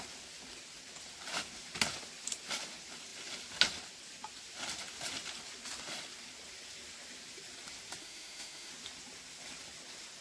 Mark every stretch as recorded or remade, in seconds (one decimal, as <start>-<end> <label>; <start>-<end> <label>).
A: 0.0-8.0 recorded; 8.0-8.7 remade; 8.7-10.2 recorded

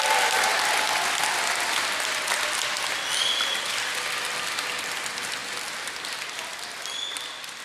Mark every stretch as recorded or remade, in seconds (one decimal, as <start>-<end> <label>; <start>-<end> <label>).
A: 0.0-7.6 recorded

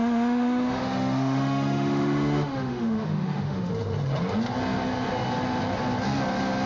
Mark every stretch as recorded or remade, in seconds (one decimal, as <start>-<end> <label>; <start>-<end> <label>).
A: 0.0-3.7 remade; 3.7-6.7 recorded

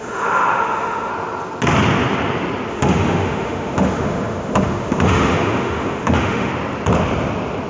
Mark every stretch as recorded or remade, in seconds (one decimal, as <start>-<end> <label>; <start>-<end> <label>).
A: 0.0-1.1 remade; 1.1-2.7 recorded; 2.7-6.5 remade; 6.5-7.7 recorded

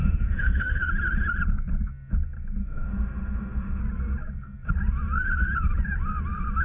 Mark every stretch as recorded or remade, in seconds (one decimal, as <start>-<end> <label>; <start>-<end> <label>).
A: 0.0-0.8 remade; 0.8-2.6 recorded; 2.6-3.8 remade; 3.8-6.6 recorded

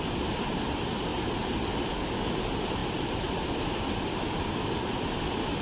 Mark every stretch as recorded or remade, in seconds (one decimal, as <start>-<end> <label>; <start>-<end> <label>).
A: 0.0-5.6 recorded

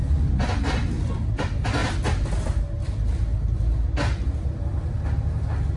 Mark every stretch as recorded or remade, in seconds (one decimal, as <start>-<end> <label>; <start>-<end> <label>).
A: 0.0-5.8 recorded

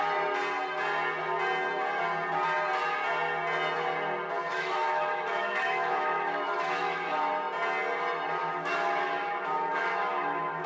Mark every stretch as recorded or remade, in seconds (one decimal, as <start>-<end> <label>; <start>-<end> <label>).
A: 0.0-4.5 recorded; 4.5-7.3 remade; 7.3-8.4 recorded; 8.4-10.7 remade